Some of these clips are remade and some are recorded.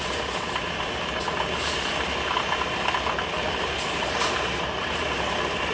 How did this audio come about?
recorded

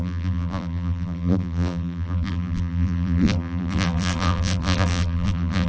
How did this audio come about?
remade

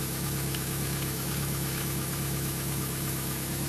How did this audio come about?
remade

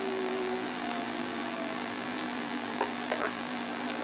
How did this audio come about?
remade